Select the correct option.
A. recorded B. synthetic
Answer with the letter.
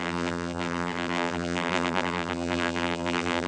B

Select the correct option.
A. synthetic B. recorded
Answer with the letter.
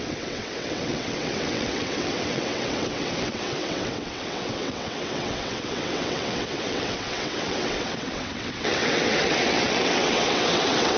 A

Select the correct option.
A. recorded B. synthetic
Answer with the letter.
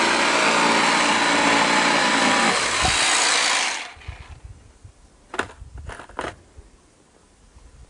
A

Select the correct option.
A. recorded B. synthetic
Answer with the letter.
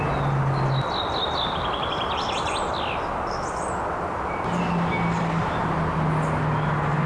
A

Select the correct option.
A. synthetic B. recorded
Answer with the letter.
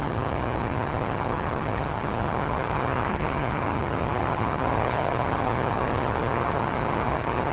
A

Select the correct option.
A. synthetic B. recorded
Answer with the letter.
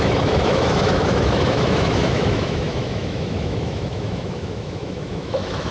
A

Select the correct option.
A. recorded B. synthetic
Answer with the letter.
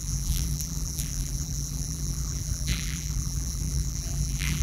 B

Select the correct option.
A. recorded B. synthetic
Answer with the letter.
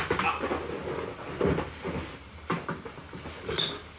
A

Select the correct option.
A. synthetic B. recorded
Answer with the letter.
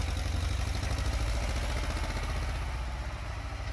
B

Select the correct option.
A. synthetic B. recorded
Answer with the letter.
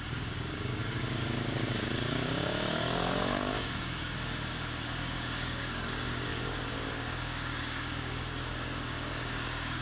A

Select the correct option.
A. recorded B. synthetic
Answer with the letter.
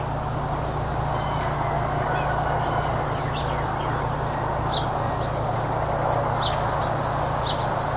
A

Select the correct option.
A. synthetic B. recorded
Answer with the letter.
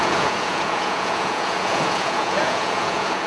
A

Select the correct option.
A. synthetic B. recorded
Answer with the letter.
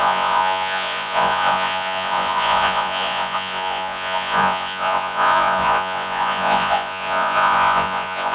A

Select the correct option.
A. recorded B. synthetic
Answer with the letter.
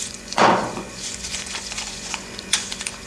B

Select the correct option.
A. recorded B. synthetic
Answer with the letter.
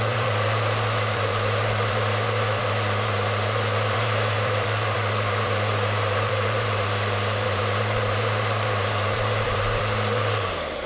B